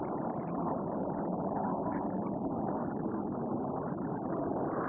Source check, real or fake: real